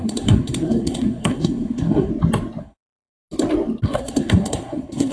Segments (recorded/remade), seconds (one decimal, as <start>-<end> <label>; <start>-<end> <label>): 0.0-2.1 remade; 2.1-2.6 recorded; 2.6-3.1 remade; 3.1-3.8 recorded; 3.8-5.1 remade